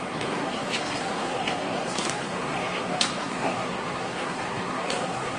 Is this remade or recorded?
remade